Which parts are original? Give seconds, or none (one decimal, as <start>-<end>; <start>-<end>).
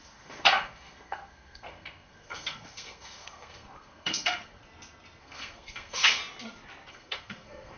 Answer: 4.6-5.2; 6.2-6.9